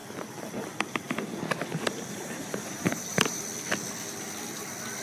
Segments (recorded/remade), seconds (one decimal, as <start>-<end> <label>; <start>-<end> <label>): 0.0-1.7 recorded; 1.7-3.4 remade; 3.4-5.0 recorded